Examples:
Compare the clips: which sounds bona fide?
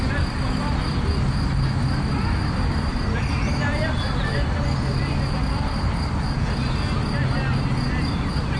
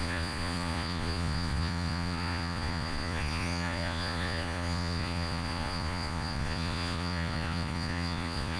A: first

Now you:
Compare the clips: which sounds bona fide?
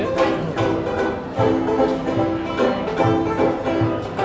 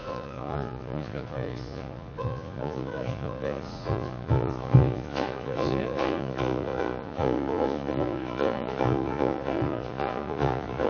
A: first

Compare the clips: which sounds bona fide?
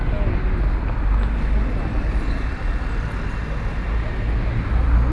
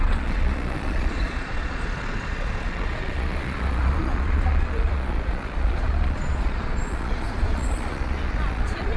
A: first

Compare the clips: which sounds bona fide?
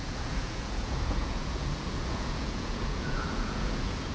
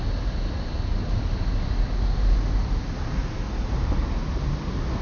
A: second